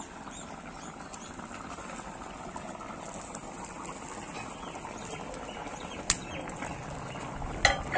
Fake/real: real